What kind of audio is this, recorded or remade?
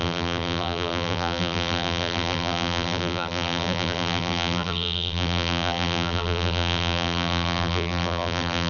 remade